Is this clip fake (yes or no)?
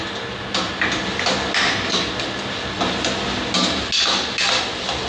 no